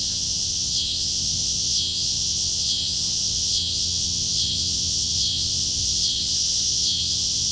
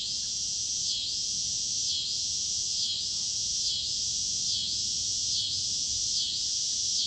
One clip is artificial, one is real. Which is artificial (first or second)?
first